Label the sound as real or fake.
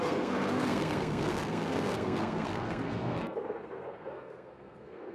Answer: fake